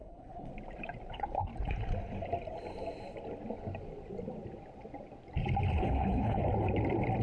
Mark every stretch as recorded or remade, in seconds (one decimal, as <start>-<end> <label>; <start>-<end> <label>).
0.0-0.5 remade; 0.5-1.1 recorded; 1.1-1.5 remade; 1.5-5.8 recorded; 5.8-6.4 remade; 6.4-7.2 recorded